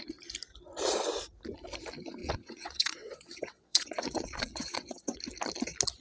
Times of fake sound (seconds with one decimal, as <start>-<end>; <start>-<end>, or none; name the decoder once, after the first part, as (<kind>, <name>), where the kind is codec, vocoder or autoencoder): 2.2-5.2 (vocoder, WaveNeXt)